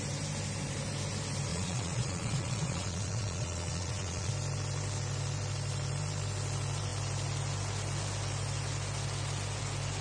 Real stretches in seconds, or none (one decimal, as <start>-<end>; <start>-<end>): 0.0-1.5; 4.3-10.0